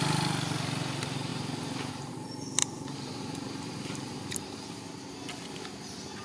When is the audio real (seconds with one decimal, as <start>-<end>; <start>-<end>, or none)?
0.0-6.2